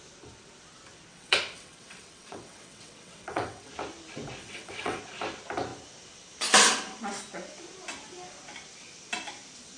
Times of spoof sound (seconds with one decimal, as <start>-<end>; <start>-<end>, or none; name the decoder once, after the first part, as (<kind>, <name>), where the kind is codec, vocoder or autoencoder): 1.1-3.7 (vocoder, WaveNeXt); 4.4-5.0